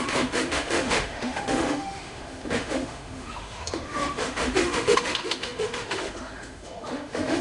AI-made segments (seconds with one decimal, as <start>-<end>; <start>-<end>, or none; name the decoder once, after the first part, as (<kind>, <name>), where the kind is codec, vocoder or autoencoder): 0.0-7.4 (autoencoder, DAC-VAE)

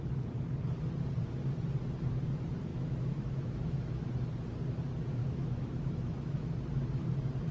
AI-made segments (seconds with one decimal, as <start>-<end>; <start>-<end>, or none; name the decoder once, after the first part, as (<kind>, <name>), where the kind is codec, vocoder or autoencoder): 2.7-4.1 (autoencoder, DAC-VAE); 5.2-6.6

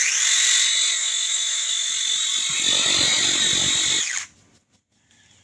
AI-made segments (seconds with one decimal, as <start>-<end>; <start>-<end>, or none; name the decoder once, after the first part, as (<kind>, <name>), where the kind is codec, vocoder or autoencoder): 1.0-1.9 (autoencoder, DAC-VAE)

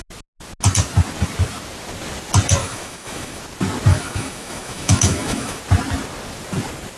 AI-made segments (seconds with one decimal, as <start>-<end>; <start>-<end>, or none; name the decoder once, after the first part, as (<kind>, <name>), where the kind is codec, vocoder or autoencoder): 2.6-3.4 (autoencoder, DAC-VAE); 3.9-5.6